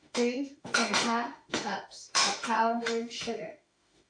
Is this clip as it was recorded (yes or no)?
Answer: no